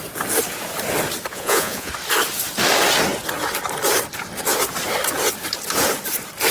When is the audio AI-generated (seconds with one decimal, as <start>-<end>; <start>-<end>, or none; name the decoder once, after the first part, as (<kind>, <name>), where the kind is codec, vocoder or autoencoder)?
1.3-1.9 (vocoder, Vocos)